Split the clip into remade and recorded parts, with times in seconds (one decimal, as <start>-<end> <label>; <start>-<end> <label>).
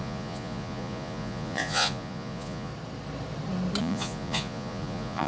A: 0.0-2.7 remade; 2.7-3.8 recorded; 3.8-5.3 remade